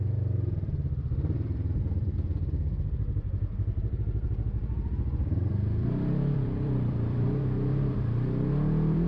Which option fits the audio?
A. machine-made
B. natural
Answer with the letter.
A